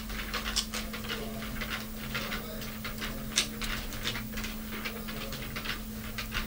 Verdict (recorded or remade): recorded